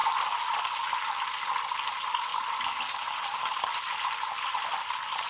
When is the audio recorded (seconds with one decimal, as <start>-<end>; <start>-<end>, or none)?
0.0-2.3; 4.3-5.3